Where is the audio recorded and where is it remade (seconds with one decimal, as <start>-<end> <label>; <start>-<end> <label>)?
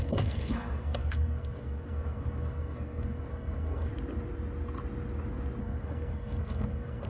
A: 0.0-3.9 remade; 3.9-5.6 recorded; 5.6-7.1 remade